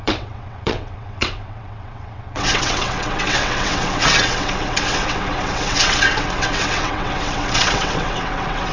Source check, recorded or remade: remade